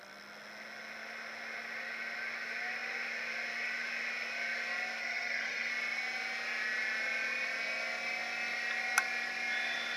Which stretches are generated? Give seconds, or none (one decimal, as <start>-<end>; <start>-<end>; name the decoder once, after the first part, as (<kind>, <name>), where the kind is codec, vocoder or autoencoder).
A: 5.0-5.7 (codec, SNAC)